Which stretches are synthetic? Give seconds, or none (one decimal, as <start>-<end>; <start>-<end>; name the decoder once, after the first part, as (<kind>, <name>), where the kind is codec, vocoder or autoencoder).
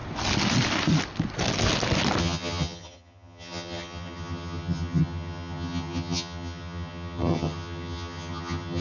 2.2-8.8 (vocoder, HiFi-GAN)